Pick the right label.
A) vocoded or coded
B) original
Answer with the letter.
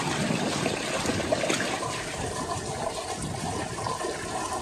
B